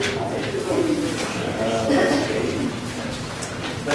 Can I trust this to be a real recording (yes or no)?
yes